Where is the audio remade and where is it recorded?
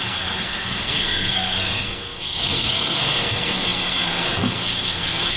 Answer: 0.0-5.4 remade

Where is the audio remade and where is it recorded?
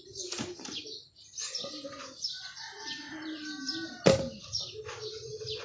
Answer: 0.0-5.6 recorded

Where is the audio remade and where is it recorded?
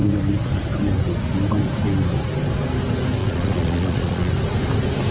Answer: 0.0-3.2 recorded; 3.2-4.3 remade; 4.3-5.1 recorded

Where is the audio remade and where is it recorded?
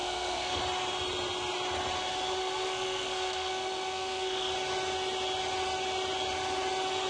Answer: 0.0-0.6 remade; 0.6-2.4 recorded; 2.4-4.5 remade; 4.5-7.1 recorded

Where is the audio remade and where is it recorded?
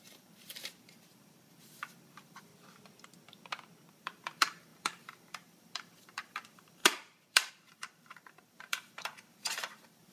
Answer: 0.0-2.5 remade; 2.5-3.9 recorded; 3.9-10.1 remade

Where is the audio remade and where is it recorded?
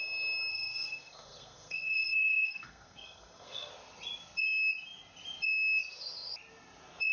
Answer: 0.0-0.5 recorded; 0.5-3.7 remade; 3.7-7.1 recorded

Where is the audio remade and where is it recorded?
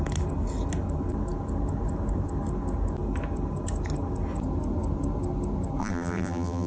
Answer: 0.0-5.8 recorded; 5.8-6.7 remade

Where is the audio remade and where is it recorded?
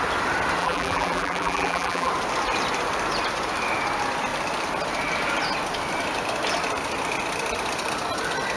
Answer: 0.0-0.6 recorded; 0.6-2.1 remade; 2.1-8.6 recorded